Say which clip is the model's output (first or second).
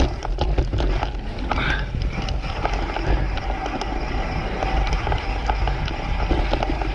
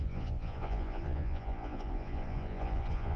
second